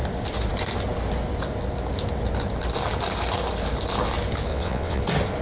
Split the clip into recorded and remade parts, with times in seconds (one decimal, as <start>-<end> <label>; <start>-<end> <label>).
0.0-4.5 recorded; 4.5-5.0 remade; 5.0-5.4 recorded